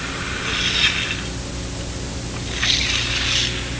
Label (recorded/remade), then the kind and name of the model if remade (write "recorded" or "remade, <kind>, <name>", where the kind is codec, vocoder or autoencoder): recorded